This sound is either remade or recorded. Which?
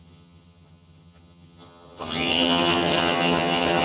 remade